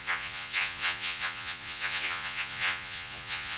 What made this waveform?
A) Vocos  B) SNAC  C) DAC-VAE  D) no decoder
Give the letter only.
A